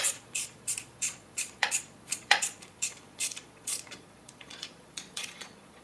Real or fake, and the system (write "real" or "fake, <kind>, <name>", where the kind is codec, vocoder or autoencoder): fake, vocoder, Vocos